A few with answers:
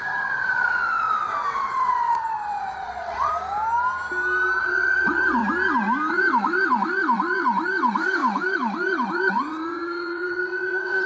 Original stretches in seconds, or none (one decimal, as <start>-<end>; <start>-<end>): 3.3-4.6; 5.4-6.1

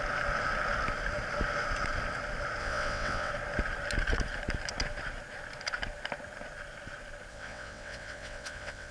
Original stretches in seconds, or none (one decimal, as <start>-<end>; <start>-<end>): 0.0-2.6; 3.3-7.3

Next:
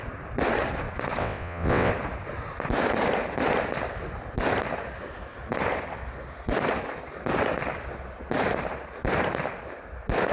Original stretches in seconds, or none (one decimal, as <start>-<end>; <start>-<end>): 0.0-1.2; 1.9-10.3

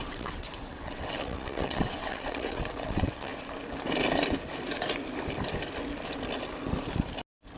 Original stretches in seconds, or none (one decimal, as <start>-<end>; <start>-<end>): 3.3-7.6

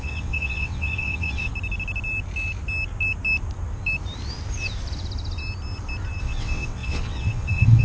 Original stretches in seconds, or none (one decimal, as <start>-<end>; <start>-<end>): 1.5-6.2

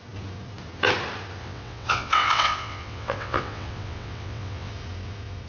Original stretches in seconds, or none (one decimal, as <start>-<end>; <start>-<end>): 0.0-1.4; 4.7-5.5